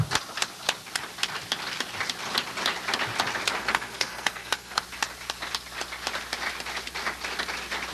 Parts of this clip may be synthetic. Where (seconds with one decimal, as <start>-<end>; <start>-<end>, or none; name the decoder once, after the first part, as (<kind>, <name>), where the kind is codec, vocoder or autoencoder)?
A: 3.6-4.8 (codec, SNAC)